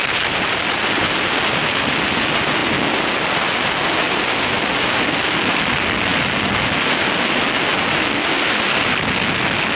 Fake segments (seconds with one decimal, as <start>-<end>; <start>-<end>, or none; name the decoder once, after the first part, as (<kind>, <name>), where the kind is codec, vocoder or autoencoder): none